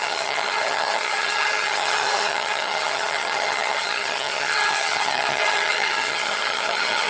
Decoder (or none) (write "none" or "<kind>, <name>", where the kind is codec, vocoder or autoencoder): vocoder, HiFi-GAN